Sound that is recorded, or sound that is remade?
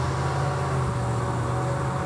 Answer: recorded